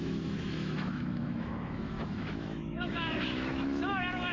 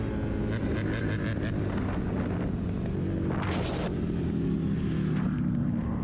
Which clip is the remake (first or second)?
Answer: first